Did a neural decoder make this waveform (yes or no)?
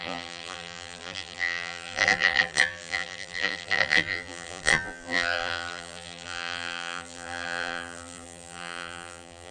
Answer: yes